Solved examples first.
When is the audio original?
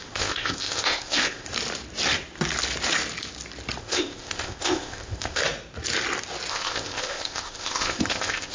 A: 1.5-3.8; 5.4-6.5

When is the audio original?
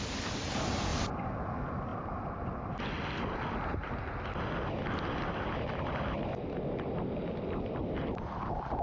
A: 0.0-8.8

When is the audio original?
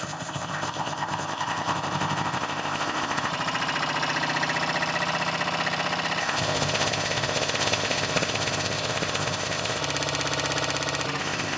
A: 3.3-6.2; 9.8-11.2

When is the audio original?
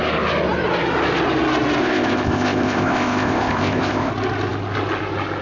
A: 0.0-1.8; 4.1-5.4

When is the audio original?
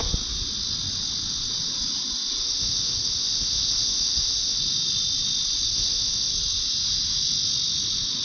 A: 0.0-2.4; 4.6-5.7; 6.3-8.2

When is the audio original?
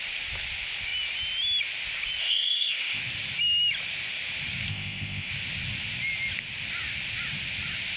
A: 0.0-2.2; 3.0-4.7; 5.3-8.0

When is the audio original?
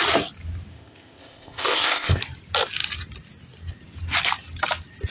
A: 0.0-0.7; 2.2-5.1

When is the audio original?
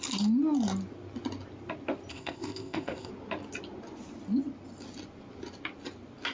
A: 0.0-2.1; 3.1-6.3